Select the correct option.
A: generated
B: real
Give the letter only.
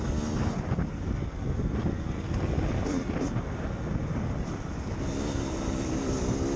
B